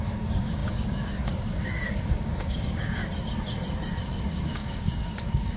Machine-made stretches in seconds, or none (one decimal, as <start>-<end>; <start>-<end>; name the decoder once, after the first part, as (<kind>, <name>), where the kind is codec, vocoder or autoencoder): 0.0-3.0 (codec, DAC); 4.0-5.6